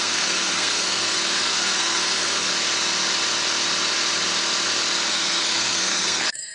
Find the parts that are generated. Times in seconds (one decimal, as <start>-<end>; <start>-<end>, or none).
0.0-2.5; 5.1-6.5